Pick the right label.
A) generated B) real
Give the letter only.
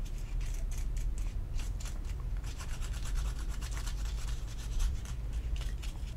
A